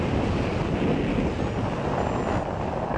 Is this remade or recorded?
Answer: recorded